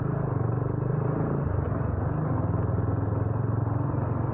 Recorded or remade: recorded